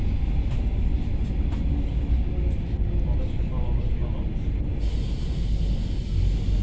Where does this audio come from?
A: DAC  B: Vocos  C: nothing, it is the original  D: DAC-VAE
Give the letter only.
C